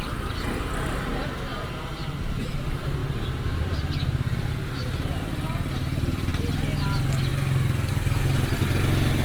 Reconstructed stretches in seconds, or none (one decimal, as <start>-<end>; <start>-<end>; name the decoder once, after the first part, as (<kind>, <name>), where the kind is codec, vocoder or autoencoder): none